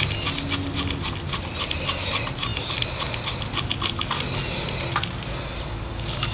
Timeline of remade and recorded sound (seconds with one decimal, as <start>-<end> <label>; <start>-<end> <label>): 0.0-6.3 recorded